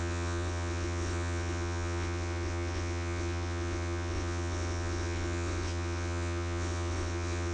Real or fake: fake